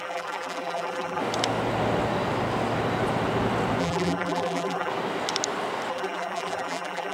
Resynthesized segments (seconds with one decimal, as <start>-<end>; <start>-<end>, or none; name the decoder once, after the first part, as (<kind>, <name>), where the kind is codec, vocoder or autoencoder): 0.0-1.2 (vocoder, BigVGAN v2); 3.8-4.9; 5.9-7.1